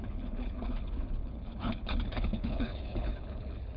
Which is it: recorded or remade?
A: remade